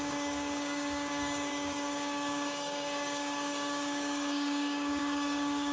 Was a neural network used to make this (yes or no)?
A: yes